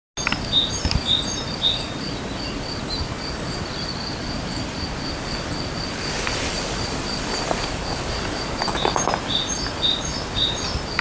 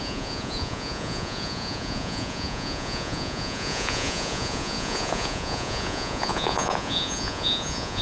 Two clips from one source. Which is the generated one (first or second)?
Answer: second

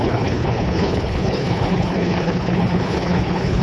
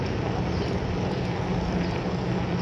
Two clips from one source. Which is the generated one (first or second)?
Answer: first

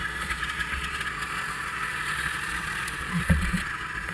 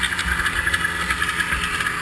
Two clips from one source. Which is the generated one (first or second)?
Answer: first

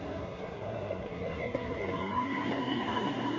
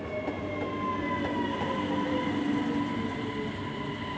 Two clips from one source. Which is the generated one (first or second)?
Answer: first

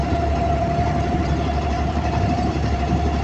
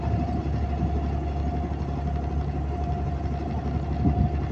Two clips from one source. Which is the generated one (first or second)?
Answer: first